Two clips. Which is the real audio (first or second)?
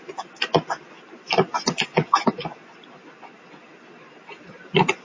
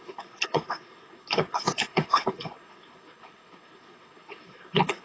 first